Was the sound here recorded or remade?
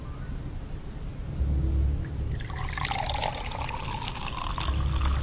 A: recorded